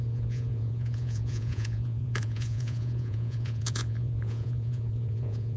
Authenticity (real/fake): fake